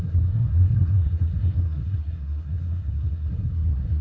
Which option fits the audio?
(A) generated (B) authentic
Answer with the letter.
A